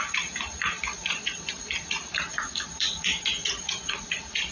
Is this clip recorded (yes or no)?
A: no